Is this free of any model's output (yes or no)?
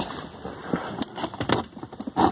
no